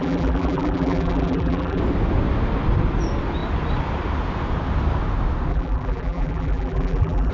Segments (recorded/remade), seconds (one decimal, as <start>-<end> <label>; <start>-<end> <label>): 0.0-1.8 remade; 1.8-5.5 recorded; 5.5-7.3 remade